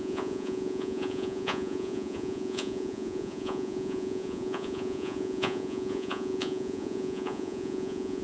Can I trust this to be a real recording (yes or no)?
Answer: no